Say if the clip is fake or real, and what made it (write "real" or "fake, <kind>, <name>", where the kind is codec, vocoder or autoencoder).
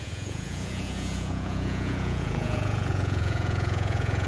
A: fake, vocoder, Vocos